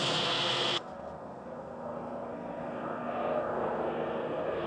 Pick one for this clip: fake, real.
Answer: fake